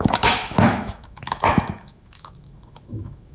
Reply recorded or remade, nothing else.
remade